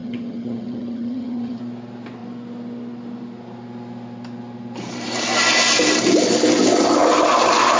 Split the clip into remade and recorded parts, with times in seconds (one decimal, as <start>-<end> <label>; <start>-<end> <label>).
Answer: 0.0-1.6 remade; 1.6-7.8 recorded